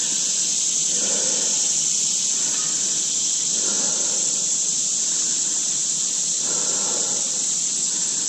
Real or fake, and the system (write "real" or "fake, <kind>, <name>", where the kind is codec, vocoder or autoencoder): real